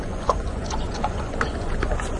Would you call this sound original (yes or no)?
no